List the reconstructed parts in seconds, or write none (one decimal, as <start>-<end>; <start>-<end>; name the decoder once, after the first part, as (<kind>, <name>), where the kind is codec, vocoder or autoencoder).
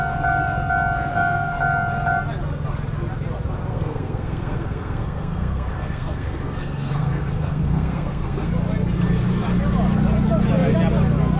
1.1-1.6 (codec, SNAC); 3.7-8.5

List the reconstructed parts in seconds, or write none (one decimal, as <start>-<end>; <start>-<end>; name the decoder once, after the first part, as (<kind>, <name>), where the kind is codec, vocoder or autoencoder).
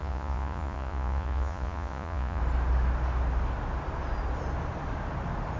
0.0-2.4 (vocoder, Vocos)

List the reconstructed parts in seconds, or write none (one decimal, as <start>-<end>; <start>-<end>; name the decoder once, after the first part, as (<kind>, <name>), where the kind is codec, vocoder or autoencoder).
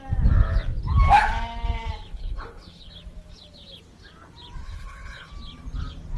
2.1-2.9 (codec, HILCodec); 4.6-5.3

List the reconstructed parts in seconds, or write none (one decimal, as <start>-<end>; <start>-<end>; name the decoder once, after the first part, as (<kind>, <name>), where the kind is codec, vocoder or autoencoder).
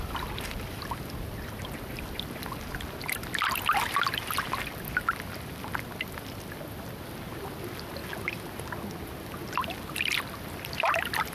none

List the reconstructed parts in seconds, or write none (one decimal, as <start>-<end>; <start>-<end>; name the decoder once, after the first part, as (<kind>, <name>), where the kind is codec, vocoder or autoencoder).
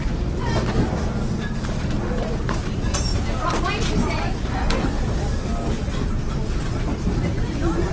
none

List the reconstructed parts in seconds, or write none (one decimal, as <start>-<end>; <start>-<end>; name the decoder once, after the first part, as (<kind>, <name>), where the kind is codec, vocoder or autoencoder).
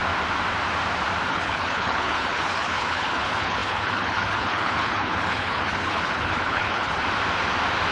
1.3-7.0 (codec, HILCodec)